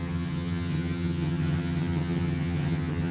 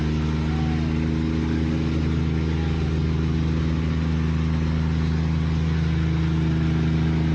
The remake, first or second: first